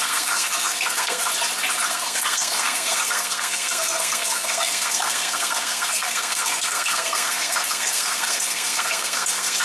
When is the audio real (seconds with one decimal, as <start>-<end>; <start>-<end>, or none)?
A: 1.3-1.9